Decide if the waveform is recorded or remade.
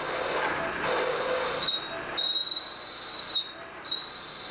recorded